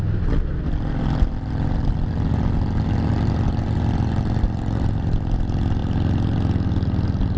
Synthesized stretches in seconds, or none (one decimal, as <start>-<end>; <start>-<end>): none